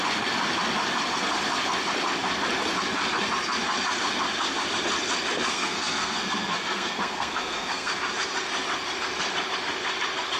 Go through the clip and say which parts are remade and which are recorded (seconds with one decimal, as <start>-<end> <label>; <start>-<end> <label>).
0.0-5.5 recorded; 5.5-7.9 remade; 7.9-10.4 recorded

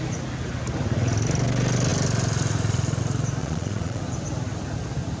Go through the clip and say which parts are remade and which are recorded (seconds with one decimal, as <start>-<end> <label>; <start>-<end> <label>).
0.0-3.4 recorded; 3.4-4.0 remade; 4.0-5.2 recorded

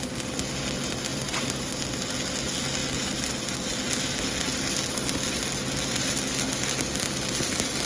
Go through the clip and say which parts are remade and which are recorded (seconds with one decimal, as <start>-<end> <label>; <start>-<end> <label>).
0.0-1.1 recorded; 1.1-1.7 remade; 1.7-7.9 recorded

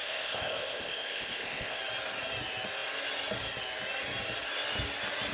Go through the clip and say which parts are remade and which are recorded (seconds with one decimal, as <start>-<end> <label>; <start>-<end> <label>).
0.0-1.8 remade; 1.8-5.3 recorded

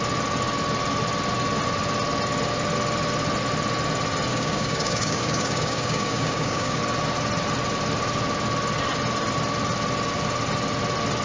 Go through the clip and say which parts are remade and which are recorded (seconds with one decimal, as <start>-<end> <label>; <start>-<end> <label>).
0.0-4.3 recorded; 4.3-6.8 remade; 6.8-11.2 recorded